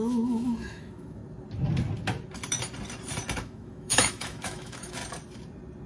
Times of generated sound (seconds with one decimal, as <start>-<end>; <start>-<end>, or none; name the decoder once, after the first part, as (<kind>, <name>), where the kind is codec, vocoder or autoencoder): 0.0-1.2 (autoencoder, DAC-VAE); 3.4-5.0